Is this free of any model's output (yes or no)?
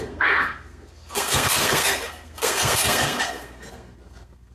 no